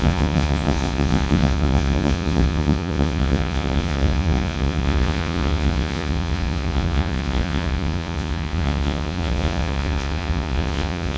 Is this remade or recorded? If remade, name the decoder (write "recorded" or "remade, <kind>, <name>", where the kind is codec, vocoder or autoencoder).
remade, vocoder, Vocos